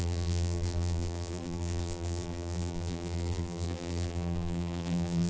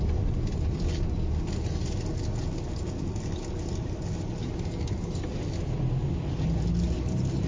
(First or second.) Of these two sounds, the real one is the second